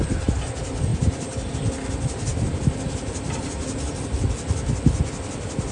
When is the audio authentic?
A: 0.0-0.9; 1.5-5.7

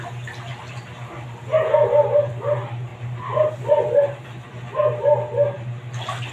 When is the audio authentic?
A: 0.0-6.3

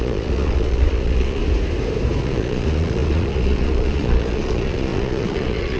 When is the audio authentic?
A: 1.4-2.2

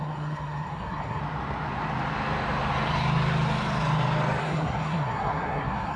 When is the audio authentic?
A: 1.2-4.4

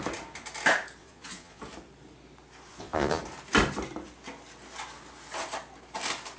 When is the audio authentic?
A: 0.0-1.0; 1.6-2.7; 3.2-6.4

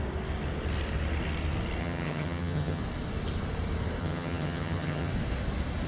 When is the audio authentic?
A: 0.0-1.8; 2.8-4.0; 5.1-5.9

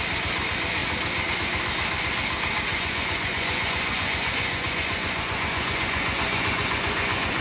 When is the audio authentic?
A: 0.0-2.7